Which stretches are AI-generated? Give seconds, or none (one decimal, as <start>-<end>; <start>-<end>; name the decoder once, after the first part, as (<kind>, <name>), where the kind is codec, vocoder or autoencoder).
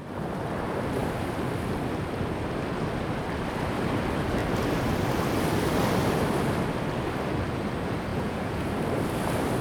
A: 8.1-8.7 (vocoder, Vocos)